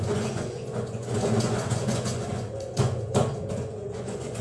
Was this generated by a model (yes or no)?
yes